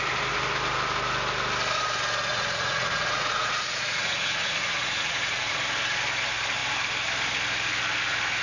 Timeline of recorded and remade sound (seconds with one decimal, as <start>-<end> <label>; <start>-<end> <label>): 0.0-2.3 recorded; 2.3-5.6 remade; 5.6-8.4 recorded